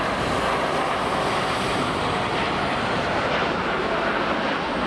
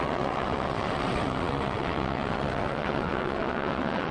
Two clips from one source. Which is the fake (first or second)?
second